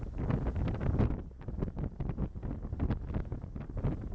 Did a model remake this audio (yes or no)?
no